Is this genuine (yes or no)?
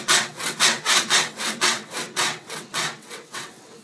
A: no